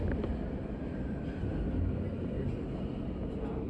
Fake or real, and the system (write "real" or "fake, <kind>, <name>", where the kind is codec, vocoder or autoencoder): real